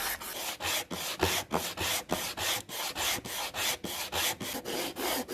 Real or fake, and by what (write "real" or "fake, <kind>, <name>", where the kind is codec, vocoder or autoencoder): real